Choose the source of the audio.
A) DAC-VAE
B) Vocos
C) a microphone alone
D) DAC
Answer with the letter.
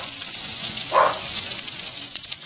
B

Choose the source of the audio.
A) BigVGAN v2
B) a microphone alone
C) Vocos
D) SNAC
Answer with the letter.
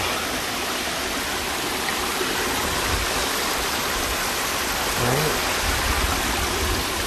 B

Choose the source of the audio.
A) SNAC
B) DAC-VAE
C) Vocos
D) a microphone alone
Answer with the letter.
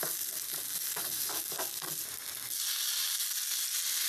D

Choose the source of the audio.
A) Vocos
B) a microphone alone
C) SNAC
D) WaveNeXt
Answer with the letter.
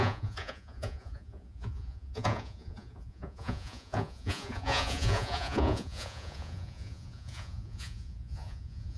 A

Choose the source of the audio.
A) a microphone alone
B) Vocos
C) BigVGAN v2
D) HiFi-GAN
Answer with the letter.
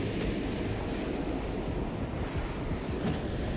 A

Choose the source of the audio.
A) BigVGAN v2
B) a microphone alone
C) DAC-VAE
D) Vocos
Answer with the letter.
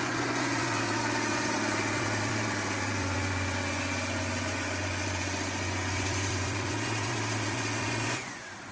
D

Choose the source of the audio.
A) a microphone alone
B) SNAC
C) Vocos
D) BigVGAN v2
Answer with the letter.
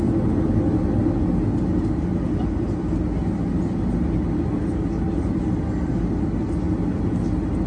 A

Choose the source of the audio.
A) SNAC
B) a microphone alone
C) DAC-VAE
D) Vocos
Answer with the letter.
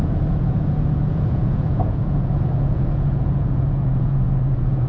D